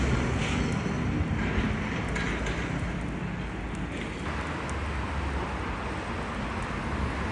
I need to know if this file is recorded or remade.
recorded